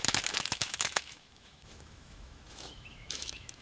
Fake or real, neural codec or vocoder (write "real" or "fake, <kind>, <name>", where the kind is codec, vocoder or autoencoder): fake, autoencoder, DAC-VAE